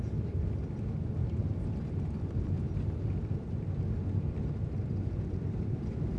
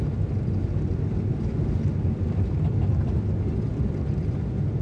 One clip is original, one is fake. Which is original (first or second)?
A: second